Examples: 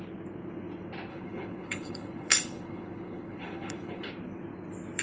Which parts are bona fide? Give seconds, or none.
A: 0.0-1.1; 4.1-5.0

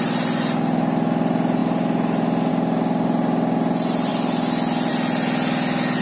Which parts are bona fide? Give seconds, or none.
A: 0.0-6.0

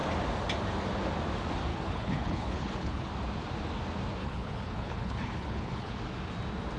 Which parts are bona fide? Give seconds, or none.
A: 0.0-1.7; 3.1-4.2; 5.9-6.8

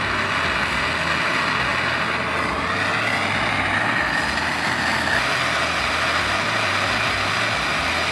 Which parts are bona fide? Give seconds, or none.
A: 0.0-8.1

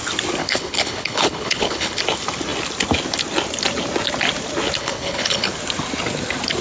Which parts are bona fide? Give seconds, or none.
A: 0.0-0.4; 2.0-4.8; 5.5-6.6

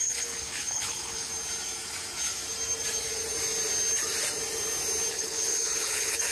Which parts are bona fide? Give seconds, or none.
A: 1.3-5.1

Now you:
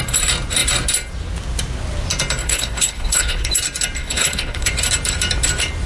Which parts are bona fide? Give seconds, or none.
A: 0.0-2.4; 3.5-4.0; 4.7-5.9